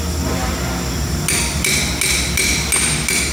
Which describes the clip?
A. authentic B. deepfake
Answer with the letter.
A